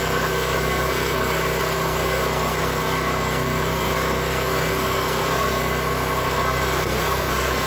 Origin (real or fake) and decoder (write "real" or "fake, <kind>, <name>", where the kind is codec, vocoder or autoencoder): fake, codec, SNAC